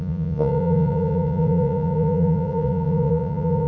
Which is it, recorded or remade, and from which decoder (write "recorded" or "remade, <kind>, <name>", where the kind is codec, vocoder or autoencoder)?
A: remade, vocoder, Vocos